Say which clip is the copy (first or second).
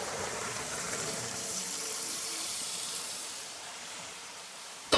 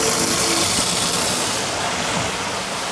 first